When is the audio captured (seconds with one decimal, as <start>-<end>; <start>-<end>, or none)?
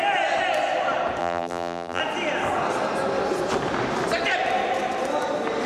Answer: 0.0-1.2; 2.0-5.7